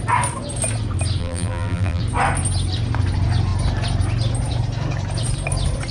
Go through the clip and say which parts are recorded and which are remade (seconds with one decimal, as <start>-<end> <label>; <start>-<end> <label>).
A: 0.0-1.2 recorded; 1.2-2.0 remade; 2.0-5.9 recorded

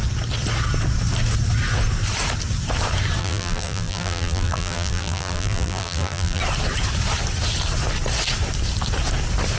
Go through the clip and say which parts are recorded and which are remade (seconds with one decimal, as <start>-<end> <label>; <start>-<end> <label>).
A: 0.0-3.2 recorded; 3.2-6.4 remade; 6.4-9.6 recorded

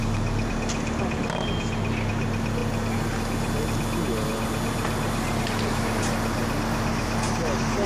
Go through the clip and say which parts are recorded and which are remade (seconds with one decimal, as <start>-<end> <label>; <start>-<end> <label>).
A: 0.0-7.9 recorded